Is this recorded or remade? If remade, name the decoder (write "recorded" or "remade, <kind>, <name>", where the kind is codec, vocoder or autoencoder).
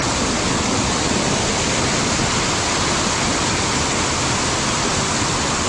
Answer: recorded